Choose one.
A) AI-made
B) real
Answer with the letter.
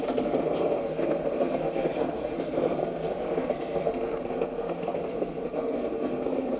A